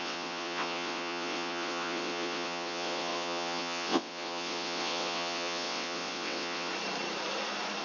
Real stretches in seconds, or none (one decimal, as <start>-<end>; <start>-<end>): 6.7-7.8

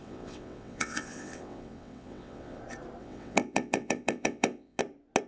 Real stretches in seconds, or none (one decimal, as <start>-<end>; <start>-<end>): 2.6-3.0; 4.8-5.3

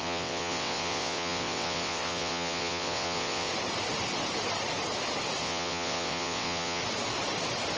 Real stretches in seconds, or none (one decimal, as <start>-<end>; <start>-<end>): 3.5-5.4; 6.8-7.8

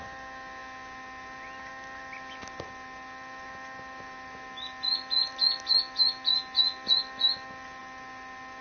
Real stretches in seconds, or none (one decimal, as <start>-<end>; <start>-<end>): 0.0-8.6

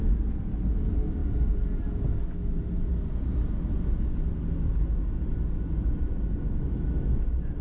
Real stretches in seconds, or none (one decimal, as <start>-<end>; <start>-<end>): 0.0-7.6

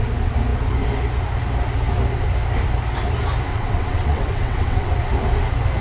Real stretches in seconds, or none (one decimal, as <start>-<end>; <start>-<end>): 0.0-3.5; 4.9-5.8

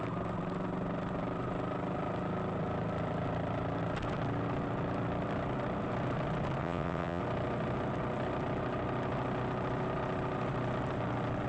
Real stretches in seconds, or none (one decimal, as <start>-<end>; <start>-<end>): 0.0-6.6; 7.2-11.5